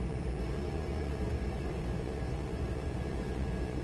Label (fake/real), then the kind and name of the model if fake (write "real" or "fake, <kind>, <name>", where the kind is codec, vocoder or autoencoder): fake, vocoder, Vocos